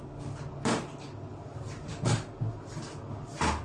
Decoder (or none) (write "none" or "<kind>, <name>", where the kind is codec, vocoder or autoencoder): none